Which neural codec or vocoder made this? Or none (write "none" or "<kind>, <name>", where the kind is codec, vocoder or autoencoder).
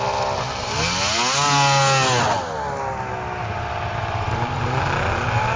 none